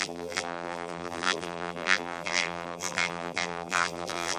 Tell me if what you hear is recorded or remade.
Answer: remade